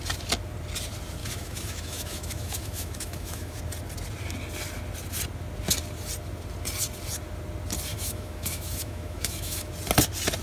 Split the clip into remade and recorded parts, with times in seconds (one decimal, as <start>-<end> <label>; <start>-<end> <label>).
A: 0.0-1.2 recorded; 1.2-3.6 remade; 3.6-7.9 recorded; 7.9-9.7 remade; 9.7-10.4 recorded